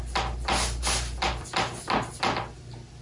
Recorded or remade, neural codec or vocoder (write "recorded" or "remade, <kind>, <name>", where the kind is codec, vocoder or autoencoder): recorded